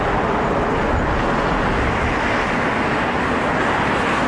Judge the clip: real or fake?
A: real